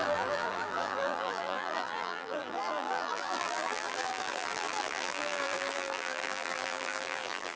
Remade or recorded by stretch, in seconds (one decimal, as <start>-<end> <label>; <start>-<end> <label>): 0.0-7.6 remade